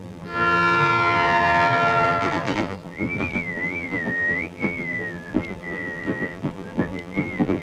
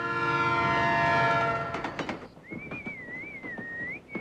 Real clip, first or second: second